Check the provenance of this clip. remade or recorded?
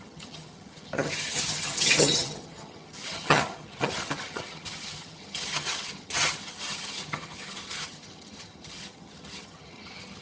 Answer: remade